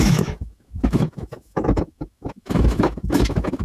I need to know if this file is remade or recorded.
remade